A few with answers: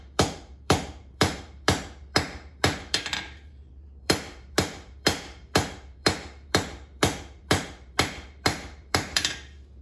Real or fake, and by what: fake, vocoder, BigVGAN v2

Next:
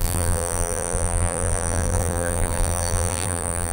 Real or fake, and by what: fake, vocoder, BigVGAN v2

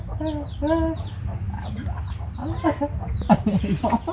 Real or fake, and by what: real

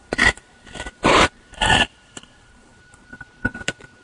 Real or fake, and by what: fake, vocoder, BigVGAN v2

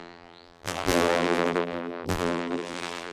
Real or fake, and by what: fake, vocoder, BigVGAN v2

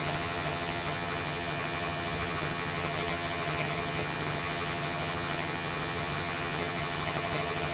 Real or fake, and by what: fake, vocoder, HiFi-GAN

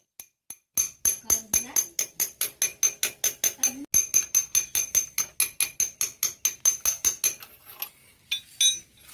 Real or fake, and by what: real